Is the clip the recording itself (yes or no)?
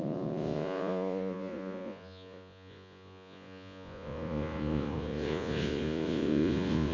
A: no